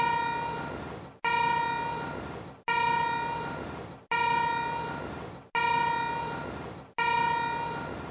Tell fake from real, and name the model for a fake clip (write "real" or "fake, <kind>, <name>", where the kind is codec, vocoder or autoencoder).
real